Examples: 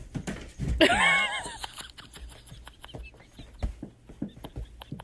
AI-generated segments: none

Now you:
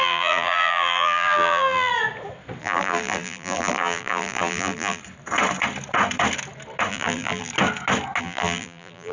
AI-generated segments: 0.0-1.9 (vocoder, BigVGAN v2); 2.6-5.0; 6.9-7.5; 8.2-9.1

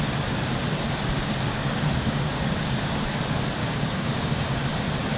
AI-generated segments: 1.5-3.0 (codec, DAC); 3.6-4.6

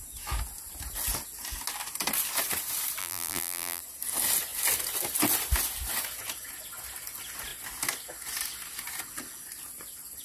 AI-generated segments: 3.0-3.8 (vocoder, BigVGAN v2)

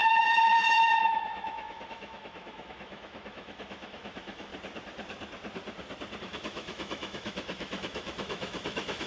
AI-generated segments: 0.0-4.5 (autoencoder, DAC-VAE); 6.2-9.1

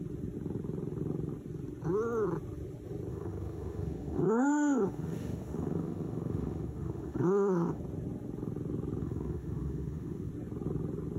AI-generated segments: 3.1-7.8 (autoencoder, DAC-VAE); 9.0-10.3

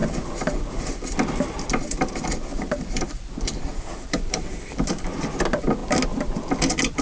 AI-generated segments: 2.5-4.9 (vocoder, BigVGAN v2)